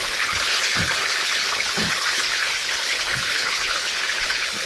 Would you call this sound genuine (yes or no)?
no